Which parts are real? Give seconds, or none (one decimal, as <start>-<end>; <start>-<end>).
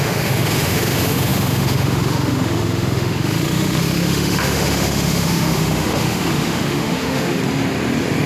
7.4-8.3